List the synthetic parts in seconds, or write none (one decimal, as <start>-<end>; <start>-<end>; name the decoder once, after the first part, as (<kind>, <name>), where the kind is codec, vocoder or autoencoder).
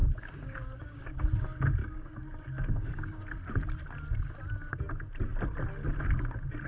0.0-1.2 (codec, DAC); 1.8-3.2